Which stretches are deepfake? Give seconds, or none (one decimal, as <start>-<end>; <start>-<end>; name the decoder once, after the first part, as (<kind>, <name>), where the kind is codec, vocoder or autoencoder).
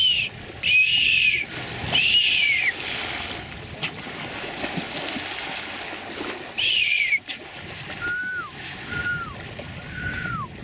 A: 8.2-8.9 (autoencoder, DAC-VAE)